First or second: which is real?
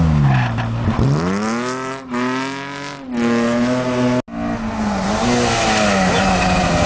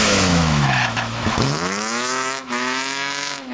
first